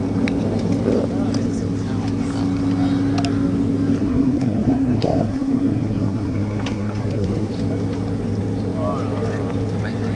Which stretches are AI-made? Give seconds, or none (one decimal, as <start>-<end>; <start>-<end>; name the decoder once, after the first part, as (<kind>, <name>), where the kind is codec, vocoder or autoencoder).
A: 4.0-7.5 (codec, SNAC)